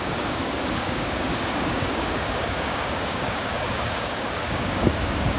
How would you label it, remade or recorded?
remade